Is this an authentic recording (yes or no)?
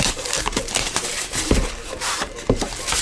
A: no